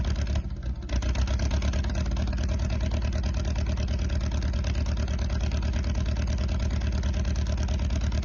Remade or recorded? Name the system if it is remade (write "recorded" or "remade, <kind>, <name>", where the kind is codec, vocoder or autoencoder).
recorded